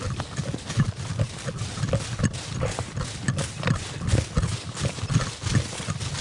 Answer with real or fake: real